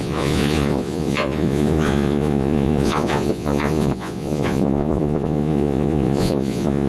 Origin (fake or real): fake